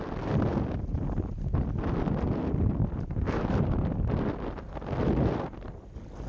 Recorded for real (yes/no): yes